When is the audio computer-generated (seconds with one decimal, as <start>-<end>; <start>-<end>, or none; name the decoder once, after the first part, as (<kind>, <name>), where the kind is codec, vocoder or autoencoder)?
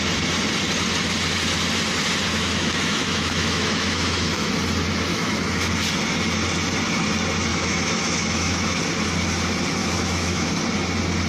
2.3-4.6 (autoencoder, DAC-VAE); 5.1-5.7; 7.5-8.8; 9.8-10.5